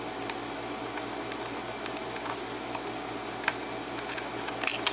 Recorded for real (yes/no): yes